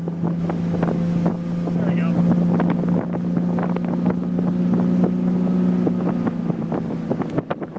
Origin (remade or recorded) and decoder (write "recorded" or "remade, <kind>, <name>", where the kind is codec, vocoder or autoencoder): recorded